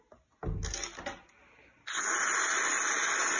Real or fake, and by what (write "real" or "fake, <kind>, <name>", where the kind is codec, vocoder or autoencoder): real